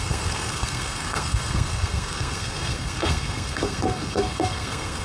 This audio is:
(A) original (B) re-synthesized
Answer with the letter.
B